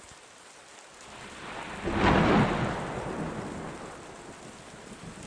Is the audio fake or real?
real